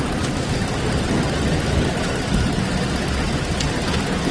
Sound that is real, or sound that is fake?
real